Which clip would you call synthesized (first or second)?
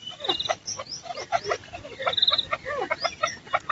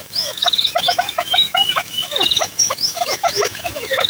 second